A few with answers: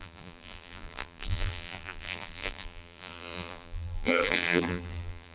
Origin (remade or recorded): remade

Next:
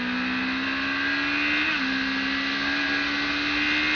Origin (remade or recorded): recorded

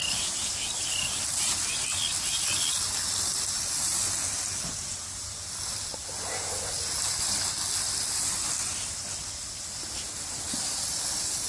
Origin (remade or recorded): recorded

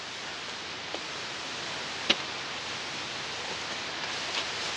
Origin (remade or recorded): recorded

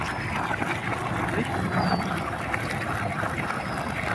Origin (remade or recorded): recorded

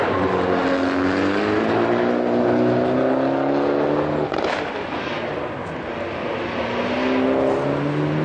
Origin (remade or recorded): recorded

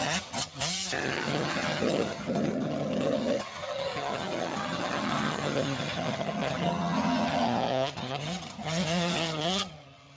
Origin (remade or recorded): remade